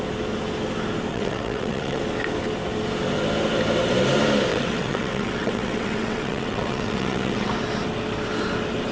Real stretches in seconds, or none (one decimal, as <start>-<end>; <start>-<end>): 0.0-1.1; 2.0-4.5; 7.5-8.9